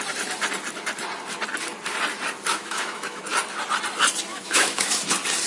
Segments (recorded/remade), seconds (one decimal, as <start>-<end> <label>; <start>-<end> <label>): 0.0-2.5 recorded; 2.5-3.2 remade; 3.2-4.3 recorded; 4.3-5.0 remade; 5.0-5.5 recorded